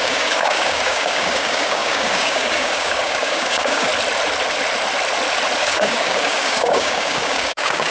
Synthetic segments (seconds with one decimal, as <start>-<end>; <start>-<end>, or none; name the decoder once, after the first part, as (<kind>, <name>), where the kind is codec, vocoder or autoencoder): 0.0-3.9 (codec, DAC); 5.6-7.9